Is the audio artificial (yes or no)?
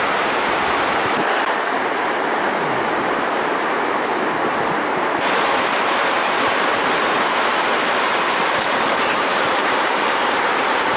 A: yes